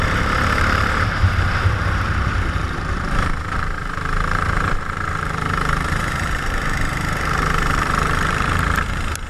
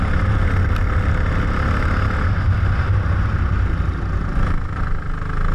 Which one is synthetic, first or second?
first